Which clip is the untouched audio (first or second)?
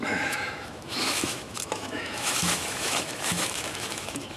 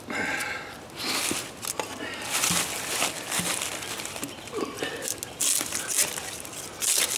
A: second